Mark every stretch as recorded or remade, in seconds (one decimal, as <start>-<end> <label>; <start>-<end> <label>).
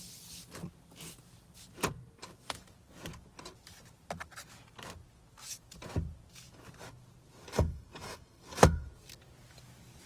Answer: 0.0-7.5 recorded; 7.5-8.9 remade; 8.9-10.1 recorded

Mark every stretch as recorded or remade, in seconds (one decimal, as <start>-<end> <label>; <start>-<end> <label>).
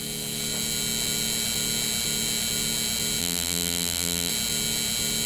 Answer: 0.0-3.2 recorded; 3.2-4.3 remade; 4.3-5.3 recorded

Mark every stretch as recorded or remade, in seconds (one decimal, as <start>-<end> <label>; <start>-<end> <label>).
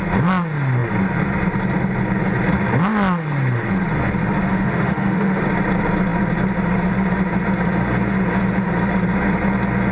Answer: 0.0-4.5 recorded; 4.5-5.4 remade; 5.4-9.9 recorded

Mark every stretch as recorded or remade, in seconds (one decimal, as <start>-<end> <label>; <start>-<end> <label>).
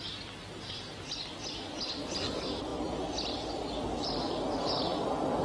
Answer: 0.0-5.4 recorded